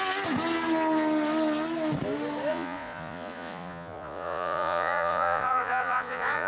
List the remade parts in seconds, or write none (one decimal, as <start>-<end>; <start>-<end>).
2.5-6.5